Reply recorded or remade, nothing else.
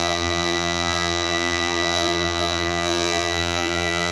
remade